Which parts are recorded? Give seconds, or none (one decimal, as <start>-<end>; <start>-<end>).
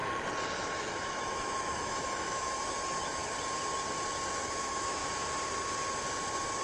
0.0-0.9; 3.2-4.4; 5.0-6.6